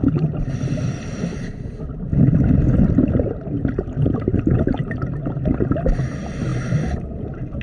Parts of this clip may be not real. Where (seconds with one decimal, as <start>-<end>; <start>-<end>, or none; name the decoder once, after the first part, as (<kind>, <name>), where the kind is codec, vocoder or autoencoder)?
none